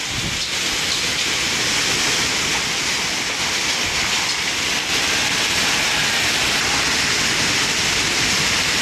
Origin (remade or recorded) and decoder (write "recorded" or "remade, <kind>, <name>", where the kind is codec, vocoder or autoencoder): recorded